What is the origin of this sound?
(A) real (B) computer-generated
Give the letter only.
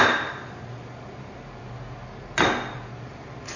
A